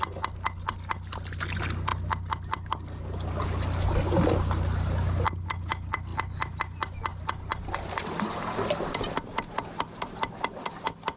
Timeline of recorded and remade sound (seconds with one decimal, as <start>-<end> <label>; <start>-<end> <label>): 0.0-11.2 recorded